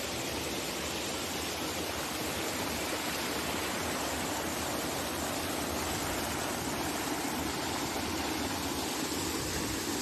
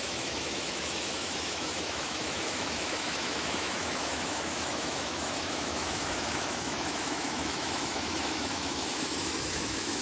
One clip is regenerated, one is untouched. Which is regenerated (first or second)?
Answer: second